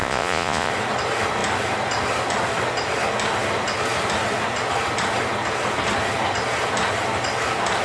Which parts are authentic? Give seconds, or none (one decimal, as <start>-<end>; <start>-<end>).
0.7-7.8